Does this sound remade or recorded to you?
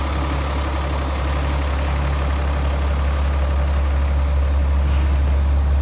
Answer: recorded